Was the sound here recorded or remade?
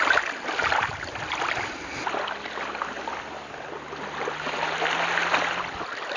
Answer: recorded